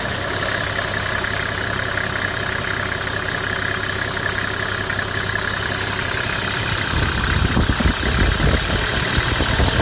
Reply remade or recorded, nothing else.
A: recorded